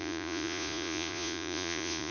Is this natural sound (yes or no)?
no